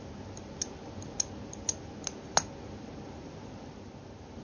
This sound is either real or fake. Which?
real